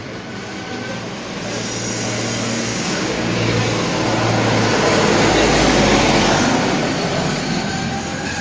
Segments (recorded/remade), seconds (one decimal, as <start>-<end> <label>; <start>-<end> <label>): 0.0-2.7 recorded; 2.7-3.6 remade; 3.6-8.4 recorded

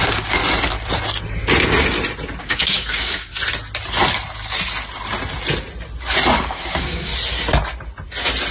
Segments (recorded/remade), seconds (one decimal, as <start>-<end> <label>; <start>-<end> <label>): 0.0-0.4 remade; 0.4-2.4 recorded; 2.4-3.3 remade; 3.3-6.4 recorded; 6.4-7.1 remade; 7.1-8.5 recorded

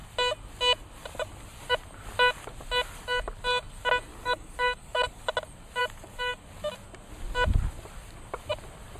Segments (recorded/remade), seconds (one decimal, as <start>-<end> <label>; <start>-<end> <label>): 0.0-4.1 recorded; 4.1-5.2 remade; 5.2-5.8 recorded; 5.8-6.4 remade; 6.4-9.0 recorded